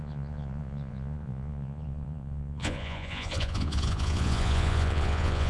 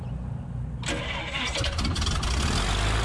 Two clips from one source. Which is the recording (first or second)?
second